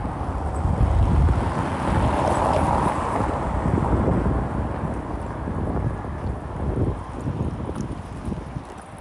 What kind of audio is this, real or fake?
real